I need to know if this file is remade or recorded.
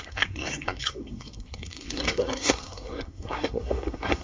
remade